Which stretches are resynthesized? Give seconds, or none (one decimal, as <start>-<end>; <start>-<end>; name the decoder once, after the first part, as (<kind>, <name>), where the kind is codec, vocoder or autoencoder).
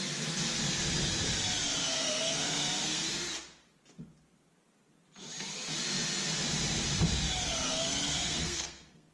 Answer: 1.8-3.0 (codec, SNAC); 7.7-9.1